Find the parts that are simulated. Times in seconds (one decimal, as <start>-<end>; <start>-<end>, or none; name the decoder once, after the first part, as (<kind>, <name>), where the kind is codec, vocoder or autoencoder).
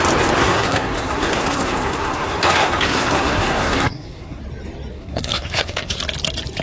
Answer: 0.4-4.4 (codec, SNAC); 4.9-6.0